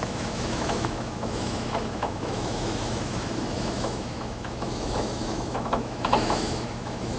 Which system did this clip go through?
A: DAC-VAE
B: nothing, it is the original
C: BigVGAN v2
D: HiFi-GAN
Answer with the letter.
A